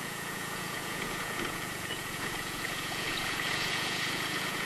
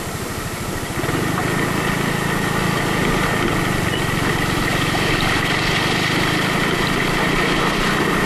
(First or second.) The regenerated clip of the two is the first